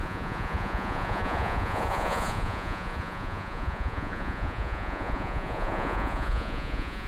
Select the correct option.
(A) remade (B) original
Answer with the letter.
A